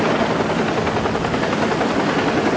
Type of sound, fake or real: real